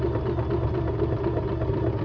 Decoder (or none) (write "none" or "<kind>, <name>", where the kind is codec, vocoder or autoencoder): none